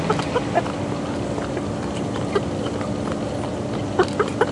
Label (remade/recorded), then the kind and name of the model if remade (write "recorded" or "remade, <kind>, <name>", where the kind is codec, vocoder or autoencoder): recorded